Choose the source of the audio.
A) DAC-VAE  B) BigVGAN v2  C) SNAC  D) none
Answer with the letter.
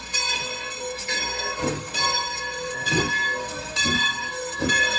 C